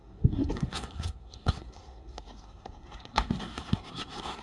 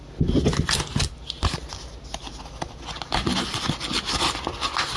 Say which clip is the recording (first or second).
second